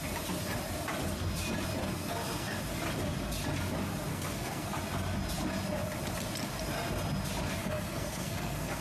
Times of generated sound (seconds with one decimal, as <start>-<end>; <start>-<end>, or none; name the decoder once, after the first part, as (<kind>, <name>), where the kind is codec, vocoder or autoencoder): 1.8-2.6 (codec, SNAC); 4.1-4.7; 7.6-8.8